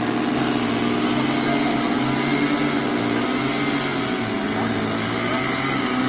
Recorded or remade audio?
recorded